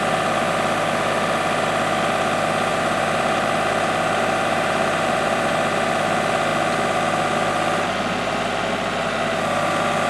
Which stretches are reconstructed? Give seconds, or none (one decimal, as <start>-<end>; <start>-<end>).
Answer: 2.7-5.5